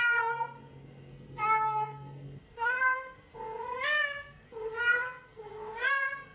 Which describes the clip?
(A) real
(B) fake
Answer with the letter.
B